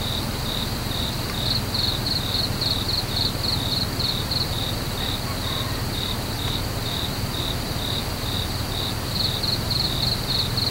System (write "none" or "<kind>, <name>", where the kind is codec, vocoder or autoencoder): none